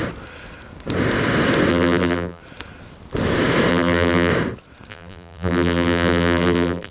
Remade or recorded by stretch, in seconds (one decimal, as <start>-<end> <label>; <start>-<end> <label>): 0.0-1.7 recorded; 1.7-2.4 remade; 2.4-3.7 recorded; 3.7-4.3 remade; 4.3-4.9 recorded; 4.9-6.9 remade